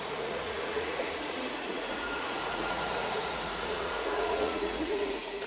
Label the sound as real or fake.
fake